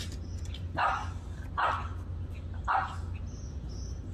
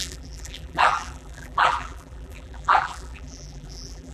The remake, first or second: second